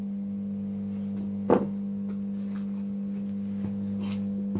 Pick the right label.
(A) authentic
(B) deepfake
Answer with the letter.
A